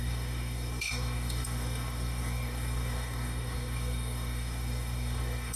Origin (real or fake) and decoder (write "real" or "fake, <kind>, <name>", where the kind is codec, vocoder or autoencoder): fake, codec, DAC